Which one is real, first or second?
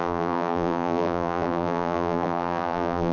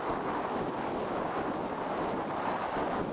second